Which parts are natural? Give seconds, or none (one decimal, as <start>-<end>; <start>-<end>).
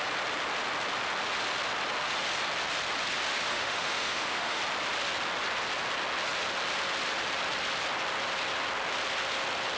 0.0-3.5; 4.6-9.8